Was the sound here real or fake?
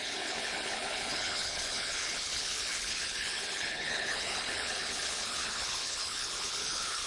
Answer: fake